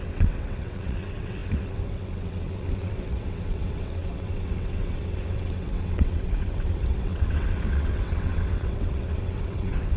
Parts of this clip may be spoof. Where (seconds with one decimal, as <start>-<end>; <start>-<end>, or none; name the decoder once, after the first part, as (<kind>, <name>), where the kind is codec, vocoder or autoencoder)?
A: 0.0-10.0 (vocoder, WaveNeXt)